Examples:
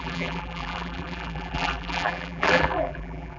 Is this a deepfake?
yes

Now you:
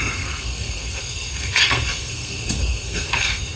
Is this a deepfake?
yes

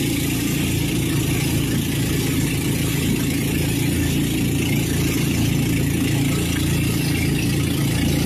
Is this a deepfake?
no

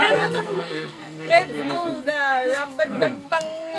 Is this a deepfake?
yes